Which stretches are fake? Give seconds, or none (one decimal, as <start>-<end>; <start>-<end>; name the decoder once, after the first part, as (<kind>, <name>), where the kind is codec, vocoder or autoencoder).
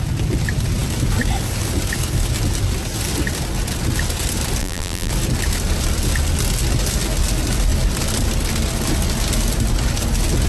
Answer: 4.6-5.1 (vocoder, BigVGAN v2)